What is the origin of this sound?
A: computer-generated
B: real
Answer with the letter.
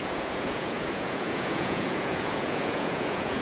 A